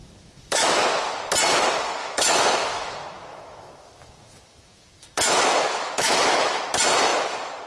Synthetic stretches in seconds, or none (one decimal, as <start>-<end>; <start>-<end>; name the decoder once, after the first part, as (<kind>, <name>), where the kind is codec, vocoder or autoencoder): 0.0-0.7 (autoencoder, DAC-VAE); 2.0-6.6